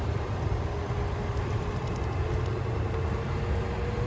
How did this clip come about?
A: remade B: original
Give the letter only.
B